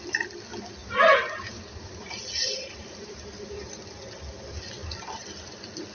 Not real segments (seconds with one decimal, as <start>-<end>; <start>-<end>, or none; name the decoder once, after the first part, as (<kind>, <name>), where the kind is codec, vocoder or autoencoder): 0.8-3.7 (vocoder, BigVGAN v2)